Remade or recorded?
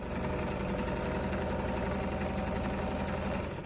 recorded